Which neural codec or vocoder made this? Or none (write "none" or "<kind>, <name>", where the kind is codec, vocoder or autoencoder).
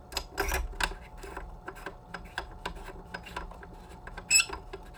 none